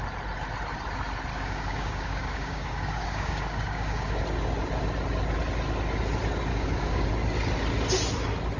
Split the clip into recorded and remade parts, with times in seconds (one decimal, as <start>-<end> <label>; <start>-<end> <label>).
0.0-1.3 recorded; 1.3-4.2 remade; 4.2-6.5 recorded; 6.5-7.1 remade; 7.1-8.6 recorded